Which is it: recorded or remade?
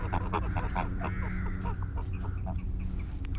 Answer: recorded